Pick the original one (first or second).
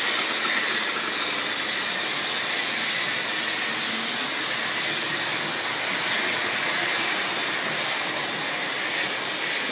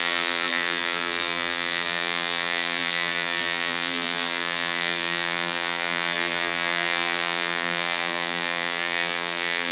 first